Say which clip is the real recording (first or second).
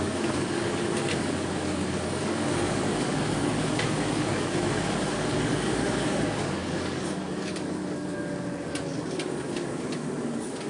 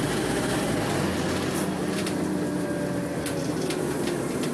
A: second